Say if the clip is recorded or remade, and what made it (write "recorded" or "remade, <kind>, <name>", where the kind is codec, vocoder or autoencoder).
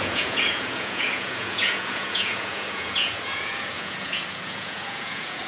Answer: remade, vocoder, Vocos